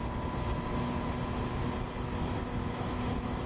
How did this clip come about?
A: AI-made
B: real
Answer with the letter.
B